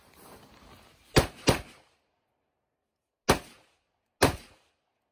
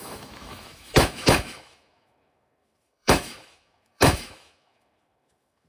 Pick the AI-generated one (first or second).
second